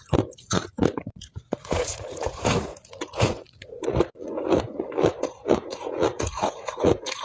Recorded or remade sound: remade